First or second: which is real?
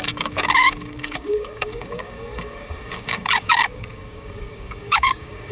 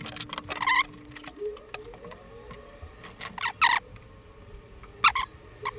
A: second